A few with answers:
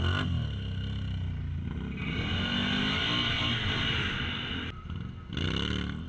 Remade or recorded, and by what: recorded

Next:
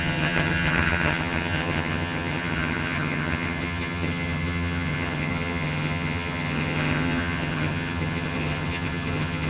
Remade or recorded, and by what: remade, vocoder, HiFi-GAN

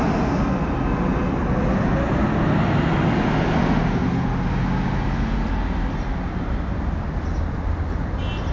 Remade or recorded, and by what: recorded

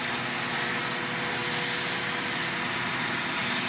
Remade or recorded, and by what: recorded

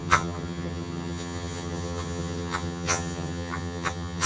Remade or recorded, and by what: remade, vocoder, HiFi-GAN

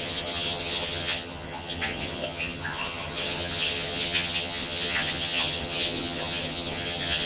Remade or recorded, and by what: remade, vocoder, HiFi-GAN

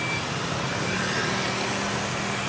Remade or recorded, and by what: recorded